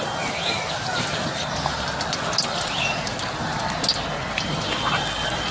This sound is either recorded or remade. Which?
recorded